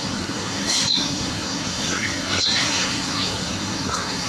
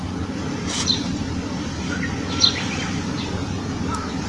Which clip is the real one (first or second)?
second